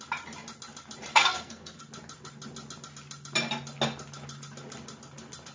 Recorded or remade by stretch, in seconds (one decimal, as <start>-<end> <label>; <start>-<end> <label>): 0.0-1.1 recorded; 1.1-1.8 remade; 1.8-5.5 recorded